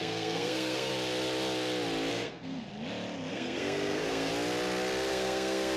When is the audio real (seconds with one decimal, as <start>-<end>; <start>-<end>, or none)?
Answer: 0.9-2.1; 2.7-3.3; 4.3-5.1